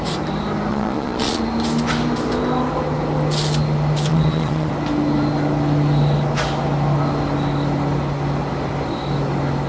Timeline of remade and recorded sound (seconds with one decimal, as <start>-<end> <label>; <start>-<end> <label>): 0.0-0.7 recorded; 0.7-1.4 remade; 1.4-4.1 recorded; 4.1-4.7 remade; 4.7-9.7 recorded